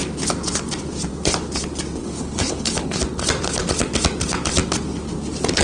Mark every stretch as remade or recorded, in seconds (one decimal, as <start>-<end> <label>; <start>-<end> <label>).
0.0-2.0 recorded; 2.0-3.0 remade; 3.0-5.6 recorded